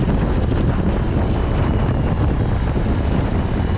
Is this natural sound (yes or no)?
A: yes